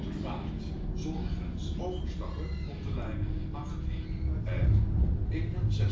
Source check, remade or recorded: recorded